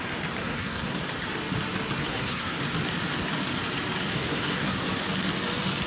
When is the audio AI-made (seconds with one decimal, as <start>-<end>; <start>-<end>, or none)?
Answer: 0.4-1.0; 2.0-2.6; 4.1-4.9